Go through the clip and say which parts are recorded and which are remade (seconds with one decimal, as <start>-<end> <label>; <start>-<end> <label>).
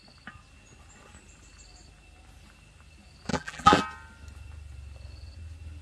0.0-3.3 recorded; 3.3-3.8 remade; 3.8-5.8 recorded